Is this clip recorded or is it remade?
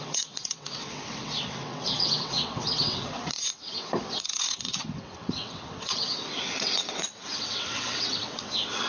remade